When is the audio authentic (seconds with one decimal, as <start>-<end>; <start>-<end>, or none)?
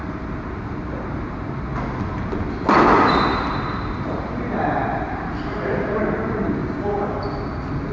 0.0-6.6; 7.1-7.9